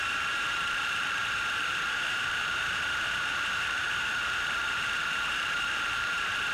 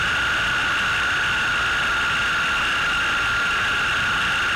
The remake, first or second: first